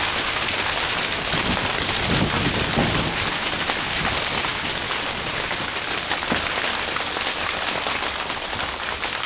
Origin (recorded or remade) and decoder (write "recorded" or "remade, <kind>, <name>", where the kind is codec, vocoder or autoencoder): recorded